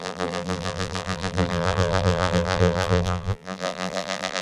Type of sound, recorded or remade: remade